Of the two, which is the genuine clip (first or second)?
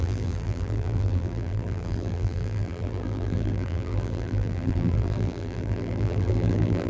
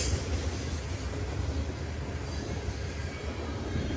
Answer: second